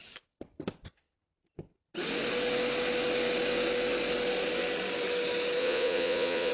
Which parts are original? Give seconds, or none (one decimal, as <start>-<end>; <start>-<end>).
0.0-5.6